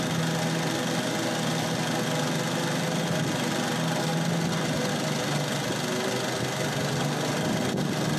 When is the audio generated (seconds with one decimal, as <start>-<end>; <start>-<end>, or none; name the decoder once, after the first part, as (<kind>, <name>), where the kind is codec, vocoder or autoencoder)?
none